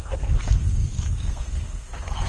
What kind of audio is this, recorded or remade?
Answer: remade